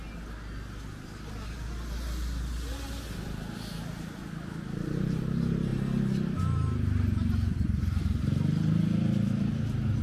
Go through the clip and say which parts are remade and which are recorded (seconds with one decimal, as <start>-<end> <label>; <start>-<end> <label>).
0.0-10.0 recorded